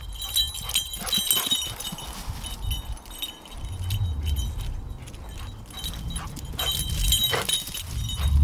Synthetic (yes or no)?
no